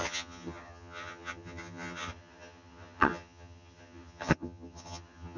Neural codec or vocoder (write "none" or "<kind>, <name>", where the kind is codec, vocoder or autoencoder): vocoder, HiFi-GAN